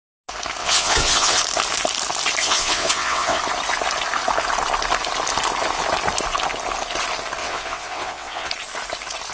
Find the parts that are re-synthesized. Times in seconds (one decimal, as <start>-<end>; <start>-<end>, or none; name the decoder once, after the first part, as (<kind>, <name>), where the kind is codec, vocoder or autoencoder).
0.6-1.4 (vocoder, WaveNeXt); 2.4-3.4; 7.4-8.5